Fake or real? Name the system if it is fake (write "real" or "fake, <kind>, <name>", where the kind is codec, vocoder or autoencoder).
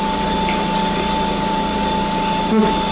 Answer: real